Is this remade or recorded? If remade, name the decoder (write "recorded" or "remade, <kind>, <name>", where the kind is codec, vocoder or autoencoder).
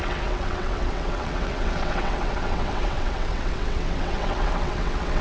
remade, vocoder, WaveNeXt